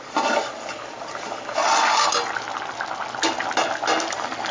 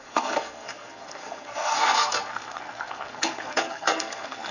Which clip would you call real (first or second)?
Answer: first